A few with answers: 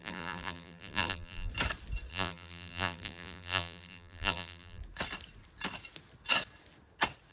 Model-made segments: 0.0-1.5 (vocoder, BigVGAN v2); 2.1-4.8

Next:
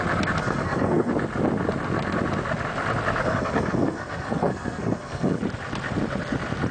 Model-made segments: 0.4-1.1 (codec, SNAC); 3.2-5.4

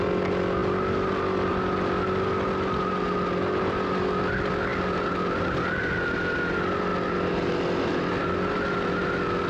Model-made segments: none